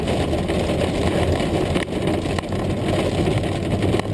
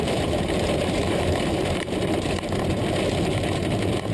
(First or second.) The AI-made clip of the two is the second